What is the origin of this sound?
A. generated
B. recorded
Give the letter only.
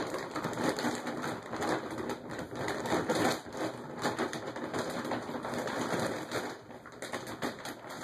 B